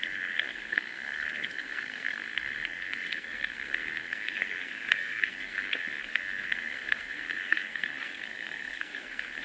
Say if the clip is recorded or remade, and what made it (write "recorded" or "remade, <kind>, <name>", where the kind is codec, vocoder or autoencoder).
remade, codec, SNAC